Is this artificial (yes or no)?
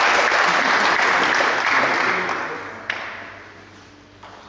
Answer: no